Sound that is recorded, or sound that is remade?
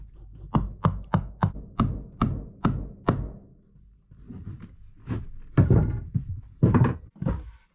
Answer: recorded